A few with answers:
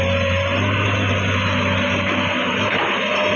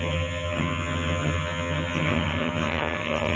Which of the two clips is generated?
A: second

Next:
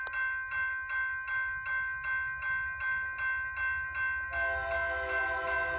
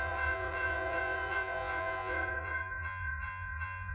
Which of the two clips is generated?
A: second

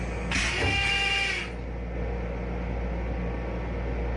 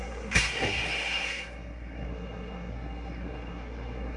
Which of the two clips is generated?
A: second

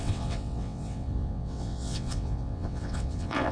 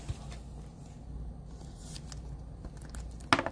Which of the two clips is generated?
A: first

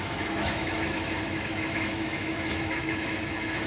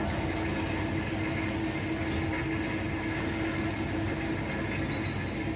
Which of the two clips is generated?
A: first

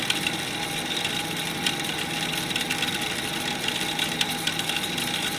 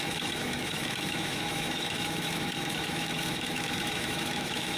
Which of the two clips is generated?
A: second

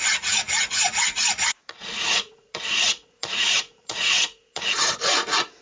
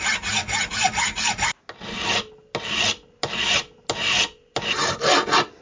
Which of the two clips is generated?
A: first